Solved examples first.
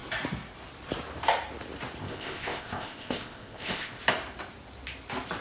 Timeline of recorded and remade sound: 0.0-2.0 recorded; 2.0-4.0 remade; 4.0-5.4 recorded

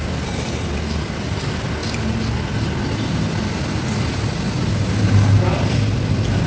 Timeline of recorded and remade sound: 0.0-6.5 recorded